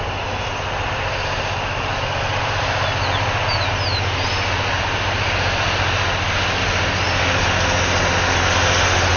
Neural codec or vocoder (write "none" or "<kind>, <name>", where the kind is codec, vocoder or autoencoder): none